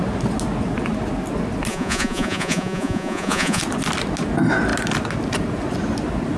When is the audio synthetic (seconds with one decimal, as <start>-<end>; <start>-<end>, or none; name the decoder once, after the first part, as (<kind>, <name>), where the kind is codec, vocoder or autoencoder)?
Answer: 1.7-3.6 (vocoder, Vocos)

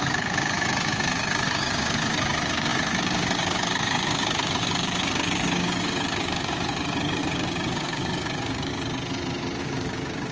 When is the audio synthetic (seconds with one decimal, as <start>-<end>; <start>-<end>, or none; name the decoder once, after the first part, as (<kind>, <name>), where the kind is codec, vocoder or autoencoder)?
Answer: 0.0-8.7 (codec, DAC); 9.6-10.3

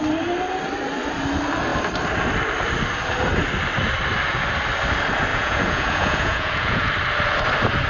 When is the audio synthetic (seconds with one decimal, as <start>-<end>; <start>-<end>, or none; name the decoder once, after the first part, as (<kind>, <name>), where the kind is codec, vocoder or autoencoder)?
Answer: 5.3-6.9 (vocoder, Vocos)

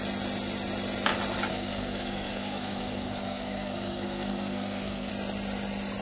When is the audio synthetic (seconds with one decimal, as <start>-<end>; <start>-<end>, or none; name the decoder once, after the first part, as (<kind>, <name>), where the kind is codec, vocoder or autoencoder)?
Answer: 1.5-5.1 (codec, SNAC)

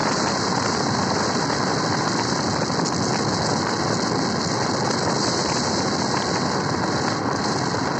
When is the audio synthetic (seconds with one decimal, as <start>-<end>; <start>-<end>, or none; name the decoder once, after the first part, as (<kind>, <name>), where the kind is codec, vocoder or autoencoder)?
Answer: none